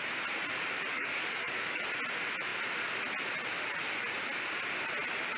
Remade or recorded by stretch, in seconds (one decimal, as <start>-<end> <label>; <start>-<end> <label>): 0.0-0.9 recorded; 0.9-1.8 remade; 1.8-5.4 recorded